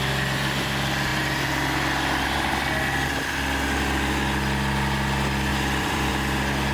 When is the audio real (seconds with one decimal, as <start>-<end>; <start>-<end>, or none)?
0.0-5.5; 6.1-6.7